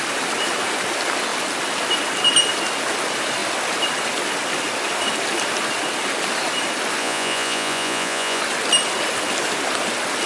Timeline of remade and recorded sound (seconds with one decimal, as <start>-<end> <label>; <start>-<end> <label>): 0.0-7.0 recorded; 7.0-8.4 remade; 8.4-10.3 recorded